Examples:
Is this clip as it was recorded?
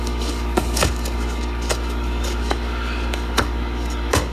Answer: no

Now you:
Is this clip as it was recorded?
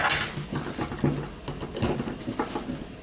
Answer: yes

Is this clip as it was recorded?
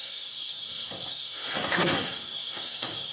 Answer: no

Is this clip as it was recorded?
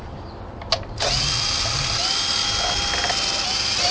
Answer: yes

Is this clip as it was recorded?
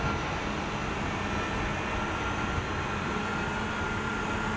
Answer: yes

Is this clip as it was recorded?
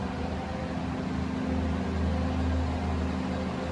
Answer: yes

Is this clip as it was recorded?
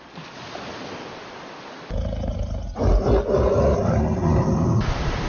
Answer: yes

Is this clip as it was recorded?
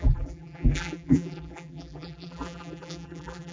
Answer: no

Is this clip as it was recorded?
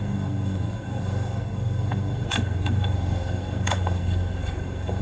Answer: no